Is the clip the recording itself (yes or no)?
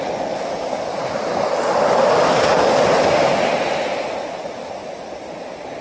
yes